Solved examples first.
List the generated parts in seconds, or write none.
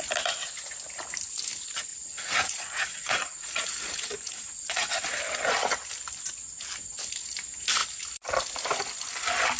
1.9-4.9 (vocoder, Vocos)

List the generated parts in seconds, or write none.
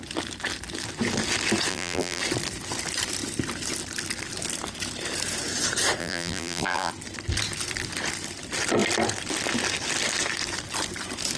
1.7-2.2 (vocoder, BigVGAN v2); 6.0-6.9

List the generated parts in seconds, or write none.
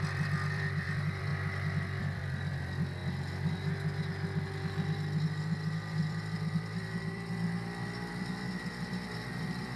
0.0-1.3 (vocoder, BigVGAN v2); 2.0-3.0; 5.4-9.8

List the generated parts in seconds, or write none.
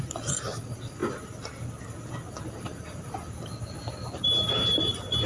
none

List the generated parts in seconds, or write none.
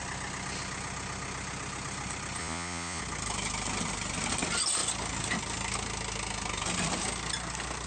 2.4-3.0 (vocoder, Vocos)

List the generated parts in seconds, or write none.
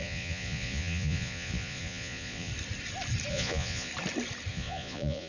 0.0-2.5 (vocoder, Vocos); 3.3-3.9; 4.5-5.3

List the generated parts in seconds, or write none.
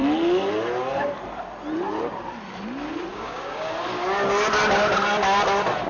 3.1-3.7 (codec, DAC)